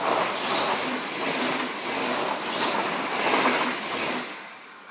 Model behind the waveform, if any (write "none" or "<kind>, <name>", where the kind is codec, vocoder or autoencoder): none